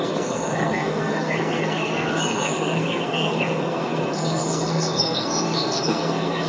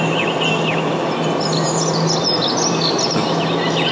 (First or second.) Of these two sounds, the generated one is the first